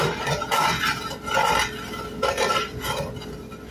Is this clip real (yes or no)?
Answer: yes